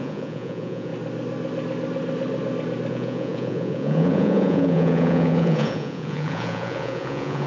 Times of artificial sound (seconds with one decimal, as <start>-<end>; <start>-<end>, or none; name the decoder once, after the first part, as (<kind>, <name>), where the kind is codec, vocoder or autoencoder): 0.0-0.9 (vocoder, Vocos); 2.9-7.5